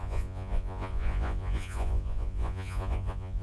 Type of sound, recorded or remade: remade